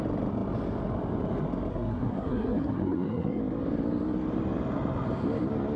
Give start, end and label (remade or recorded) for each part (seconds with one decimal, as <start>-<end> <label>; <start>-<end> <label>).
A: 0.0-1.7 recorded; 1.7-3.4 remade; 3.4-5.8 recorded